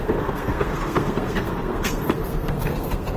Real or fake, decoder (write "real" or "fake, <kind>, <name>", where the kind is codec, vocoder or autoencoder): fake, codec, SNAC